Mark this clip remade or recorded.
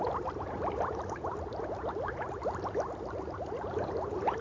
recorded